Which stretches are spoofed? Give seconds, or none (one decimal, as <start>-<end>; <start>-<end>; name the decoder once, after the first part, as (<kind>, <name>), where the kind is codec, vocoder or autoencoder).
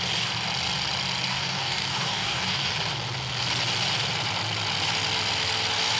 1.3-2.7 (codec, DAC)